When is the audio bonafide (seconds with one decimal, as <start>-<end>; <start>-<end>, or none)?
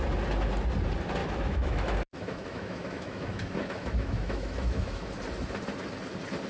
0.0-1.2; 5.1-6.5